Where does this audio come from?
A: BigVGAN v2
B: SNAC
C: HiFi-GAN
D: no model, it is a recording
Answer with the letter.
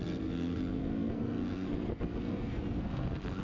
B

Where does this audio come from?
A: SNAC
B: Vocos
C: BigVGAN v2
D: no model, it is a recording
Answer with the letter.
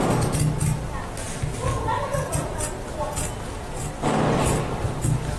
D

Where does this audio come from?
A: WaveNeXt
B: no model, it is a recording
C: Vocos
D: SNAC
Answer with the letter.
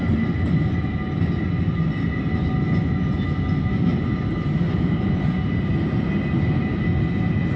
B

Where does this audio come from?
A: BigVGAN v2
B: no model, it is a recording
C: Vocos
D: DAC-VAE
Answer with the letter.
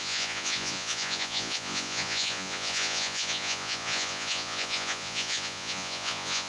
C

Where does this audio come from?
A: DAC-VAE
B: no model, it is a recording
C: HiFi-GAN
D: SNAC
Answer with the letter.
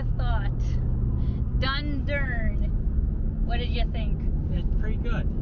B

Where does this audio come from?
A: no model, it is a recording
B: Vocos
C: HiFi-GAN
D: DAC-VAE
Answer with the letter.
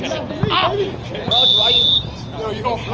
A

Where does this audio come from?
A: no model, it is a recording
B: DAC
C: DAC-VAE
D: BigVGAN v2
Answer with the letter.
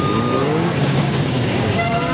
B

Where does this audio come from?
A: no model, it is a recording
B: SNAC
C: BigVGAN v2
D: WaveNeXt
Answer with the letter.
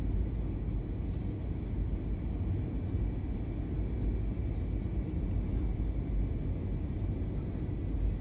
A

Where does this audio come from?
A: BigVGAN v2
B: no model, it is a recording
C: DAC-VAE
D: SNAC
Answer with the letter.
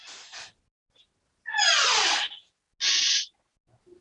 B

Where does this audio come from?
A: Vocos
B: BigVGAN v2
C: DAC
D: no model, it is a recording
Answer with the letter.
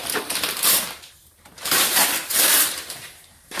B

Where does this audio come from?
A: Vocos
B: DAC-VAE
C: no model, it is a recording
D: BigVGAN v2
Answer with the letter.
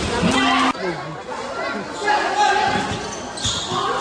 C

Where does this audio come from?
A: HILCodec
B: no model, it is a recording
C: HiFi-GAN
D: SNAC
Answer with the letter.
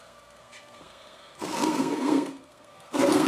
D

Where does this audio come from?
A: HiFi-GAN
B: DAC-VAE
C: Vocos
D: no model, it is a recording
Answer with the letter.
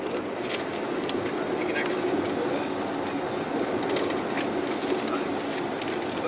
D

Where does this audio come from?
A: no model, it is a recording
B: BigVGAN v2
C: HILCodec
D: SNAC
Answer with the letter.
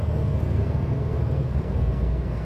D